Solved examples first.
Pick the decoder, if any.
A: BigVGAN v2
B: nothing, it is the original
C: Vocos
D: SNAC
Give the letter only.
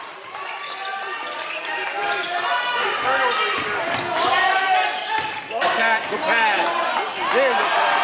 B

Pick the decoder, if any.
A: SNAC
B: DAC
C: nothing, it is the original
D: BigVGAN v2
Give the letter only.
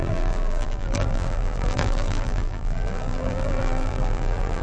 D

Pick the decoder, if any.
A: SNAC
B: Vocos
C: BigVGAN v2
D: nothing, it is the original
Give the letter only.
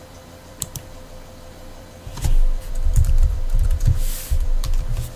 C